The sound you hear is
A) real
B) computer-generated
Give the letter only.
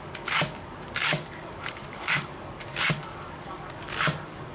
B